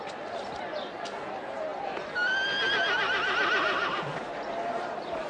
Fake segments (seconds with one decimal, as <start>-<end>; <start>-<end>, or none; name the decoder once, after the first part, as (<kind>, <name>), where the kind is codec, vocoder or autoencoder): 1.7-5.3 (vocoder, BigVGAN v2)